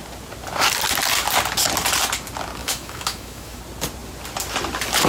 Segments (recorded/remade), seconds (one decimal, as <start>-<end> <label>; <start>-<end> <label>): 0.0-2.6 recorded; 2.6-3.6 remade; 3.6-5.1 recorded